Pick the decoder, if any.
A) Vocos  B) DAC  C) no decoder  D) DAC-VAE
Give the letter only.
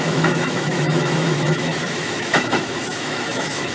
D